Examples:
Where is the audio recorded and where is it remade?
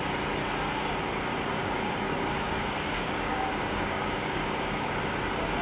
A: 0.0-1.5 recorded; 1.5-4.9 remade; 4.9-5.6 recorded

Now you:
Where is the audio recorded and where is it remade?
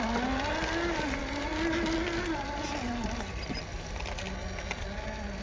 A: 0.0-5.4 recorded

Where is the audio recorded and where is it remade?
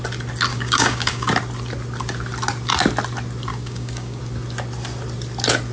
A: 0.0-0.5 recorded; 0.5-1.3 remade; 1.3-3.5 recorded; 3.5-4.2 remade; 4.2-5.7 recorded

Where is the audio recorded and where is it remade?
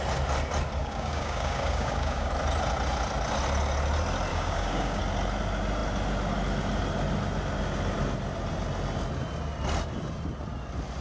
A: 0.0-0.8 recorded; 0.8-2.3 remade; 2.3-4.3 recorded; 4.3-5.0 remade; 5.0-11.0 recorded